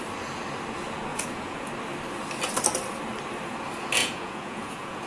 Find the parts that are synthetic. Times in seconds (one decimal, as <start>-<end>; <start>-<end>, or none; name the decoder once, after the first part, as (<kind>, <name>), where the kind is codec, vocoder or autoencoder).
1.1-1.7 (vocoder, Vocos); 4.0-5.1